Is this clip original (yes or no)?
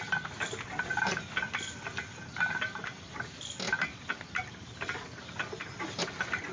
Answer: yes